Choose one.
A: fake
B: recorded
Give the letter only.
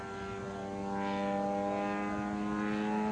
B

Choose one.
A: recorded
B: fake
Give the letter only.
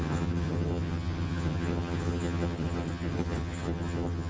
B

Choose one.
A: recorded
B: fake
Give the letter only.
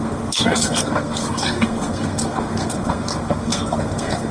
B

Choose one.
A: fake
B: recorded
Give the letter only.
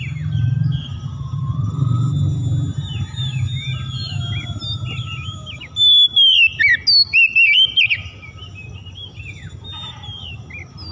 B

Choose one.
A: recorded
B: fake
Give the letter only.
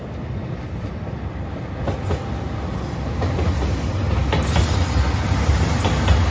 A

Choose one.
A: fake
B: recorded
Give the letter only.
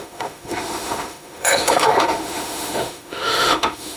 A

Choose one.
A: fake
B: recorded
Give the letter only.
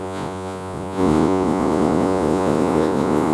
A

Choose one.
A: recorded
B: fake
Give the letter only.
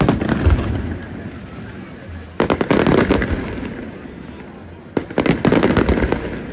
A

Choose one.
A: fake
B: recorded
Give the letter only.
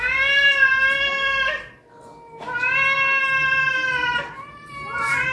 B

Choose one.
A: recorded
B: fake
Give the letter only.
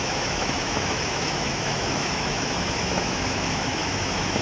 B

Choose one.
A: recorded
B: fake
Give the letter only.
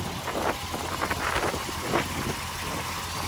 A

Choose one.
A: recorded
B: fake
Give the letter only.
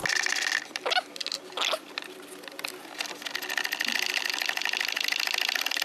A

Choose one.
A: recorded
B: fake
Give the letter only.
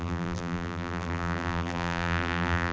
B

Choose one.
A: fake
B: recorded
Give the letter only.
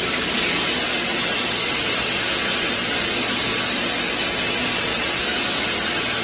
B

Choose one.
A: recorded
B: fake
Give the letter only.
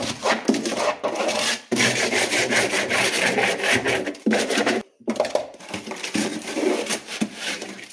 B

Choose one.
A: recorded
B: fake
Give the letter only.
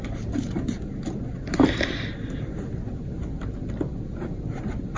A